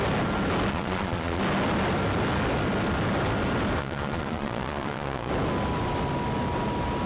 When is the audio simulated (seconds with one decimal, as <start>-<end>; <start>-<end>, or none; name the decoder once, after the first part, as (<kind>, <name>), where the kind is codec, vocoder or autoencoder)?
0.7-1.4 (vocoder, Vocos); 3.8-5.3